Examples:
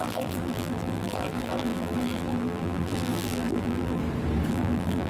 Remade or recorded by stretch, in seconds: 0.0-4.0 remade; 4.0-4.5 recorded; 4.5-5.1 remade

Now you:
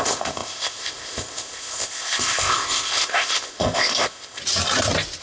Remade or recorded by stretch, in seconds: 0.0-4.4 remade; 4.4-5.2 recorded

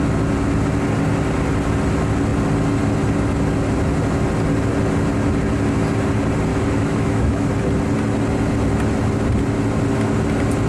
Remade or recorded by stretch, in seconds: 0.0-6.5 recorded; 6.5-7.5 remade; 7.5-10.7 recorded

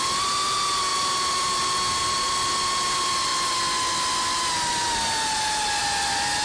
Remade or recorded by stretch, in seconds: 0.0-6.4 recorded

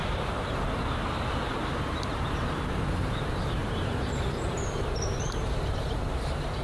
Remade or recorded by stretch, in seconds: 0.0-6.6 remade